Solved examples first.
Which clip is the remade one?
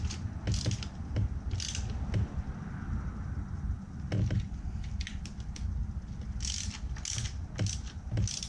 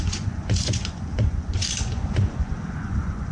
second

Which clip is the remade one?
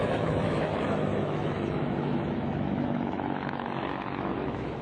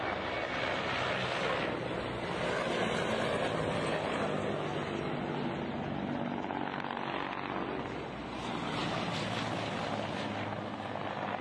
first